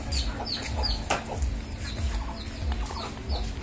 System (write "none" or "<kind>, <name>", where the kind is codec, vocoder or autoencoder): none